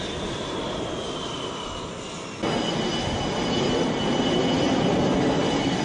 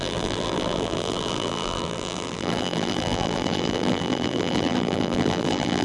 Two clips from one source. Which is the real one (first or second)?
first